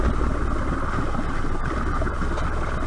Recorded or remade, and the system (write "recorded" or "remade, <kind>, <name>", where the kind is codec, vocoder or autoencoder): recorded